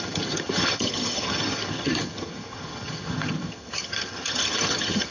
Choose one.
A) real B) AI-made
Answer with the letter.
B